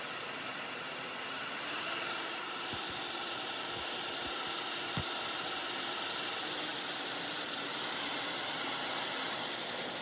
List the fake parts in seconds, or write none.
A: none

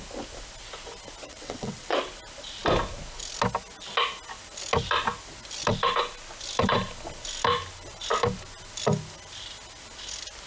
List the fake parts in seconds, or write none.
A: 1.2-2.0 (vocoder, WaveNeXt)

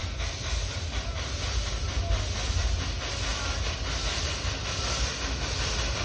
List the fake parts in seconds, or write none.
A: none